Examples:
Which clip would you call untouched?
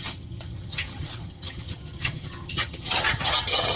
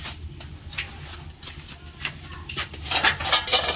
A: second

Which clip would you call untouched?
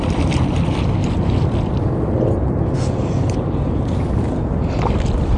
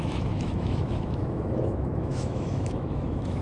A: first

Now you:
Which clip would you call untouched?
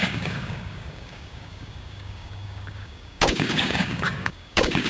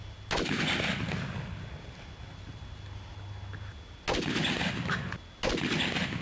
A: second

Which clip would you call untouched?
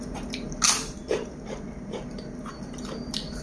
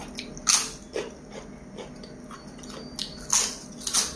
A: second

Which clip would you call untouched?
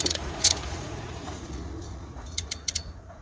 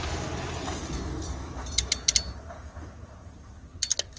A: second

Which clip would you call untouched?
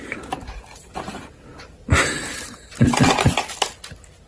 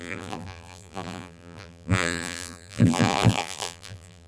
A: first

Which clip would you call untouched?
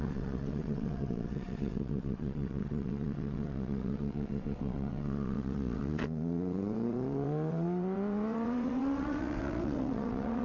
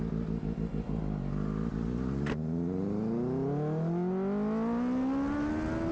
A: second